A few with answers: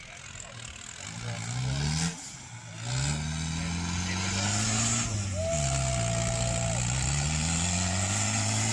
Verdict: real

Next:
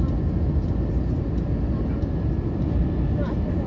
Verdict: real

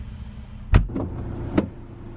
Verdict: real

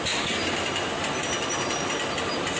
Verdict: real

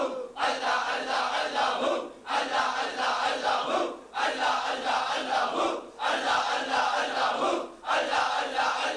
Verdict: real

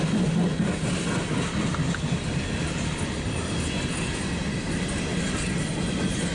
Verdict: real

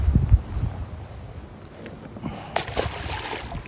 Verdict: real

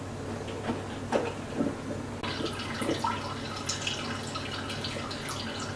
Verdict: real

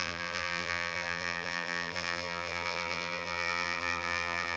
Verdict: fake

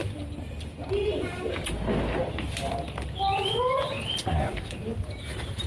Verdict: real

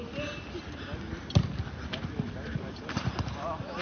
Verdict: real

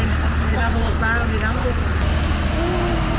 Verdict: real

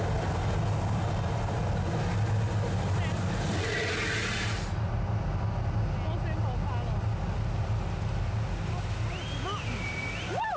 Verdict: real